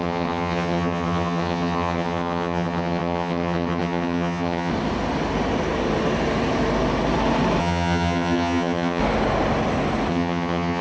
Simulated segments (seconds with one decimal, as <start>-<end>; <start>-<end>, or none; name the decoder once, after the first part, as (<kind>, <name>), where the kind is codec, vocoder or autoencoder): 0.0-4.7 (vocoder, HiFi-GAN); 7.6-9.0; 10.1-10.8